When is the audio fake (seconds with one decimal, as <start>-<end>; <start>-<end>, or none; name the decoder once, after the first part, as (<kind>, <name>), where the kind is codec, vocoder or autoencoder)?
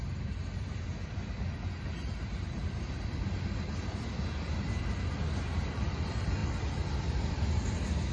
none